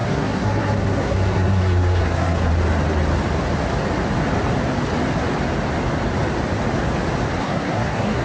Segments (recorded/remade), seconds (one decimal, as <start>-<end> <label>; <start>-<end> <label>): 0.0-2.5 remade; 2.5-7.4 recorded; 7.4-8.2 remade